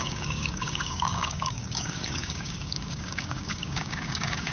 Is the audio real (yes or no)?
no